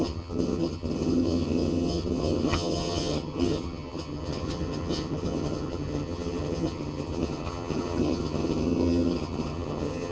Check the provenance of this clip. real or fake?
fake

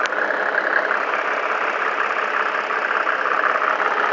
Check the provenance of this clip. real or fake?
real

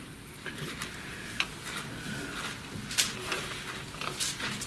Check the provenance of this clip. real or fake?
real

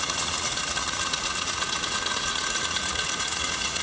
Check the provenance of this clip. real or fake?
fake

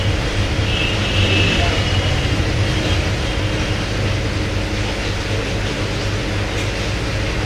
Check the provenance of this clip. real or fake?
real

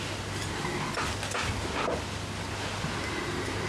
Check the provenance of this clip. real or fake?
real